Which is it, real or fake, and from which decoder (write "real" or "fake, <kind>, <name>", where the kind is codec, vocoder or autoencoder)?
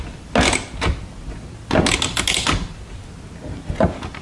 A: real